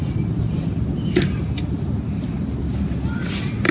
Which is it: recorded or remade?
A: recorded